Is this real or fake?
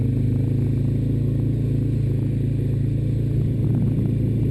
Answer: real